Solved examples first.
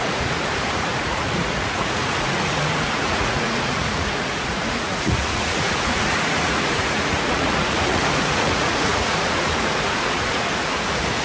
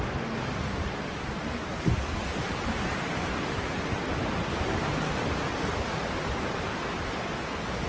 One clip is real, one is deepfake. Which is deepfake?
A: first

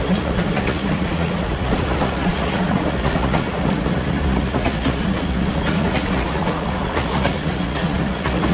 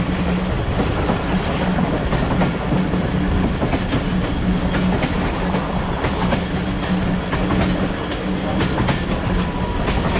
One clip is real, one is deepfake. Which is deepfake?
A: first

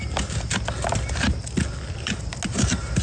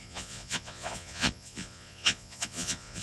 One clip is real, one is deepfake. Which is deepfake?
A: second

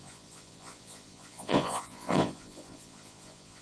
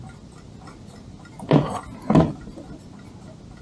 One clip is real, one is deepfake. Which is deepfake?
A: first